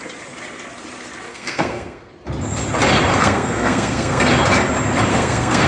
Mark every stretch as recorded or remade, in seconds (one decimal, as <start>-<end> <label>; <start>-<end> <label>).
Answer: 0.0-1.3 recorded; 1.3-2.1 remade; 2.1-3.1 recorded; 3.1-4.3 remade; 4.3-5.1 recorded; 5.1-5.7 remade